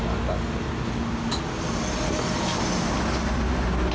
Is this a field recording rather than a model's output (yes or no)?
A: yes